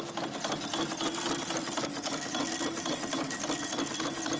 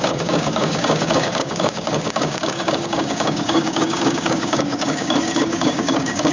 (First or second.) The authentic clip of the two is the first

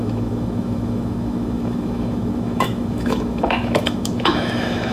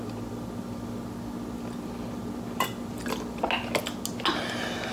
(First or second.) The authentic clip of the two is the second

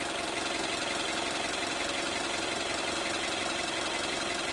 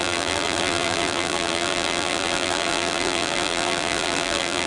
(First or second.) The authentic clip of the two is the first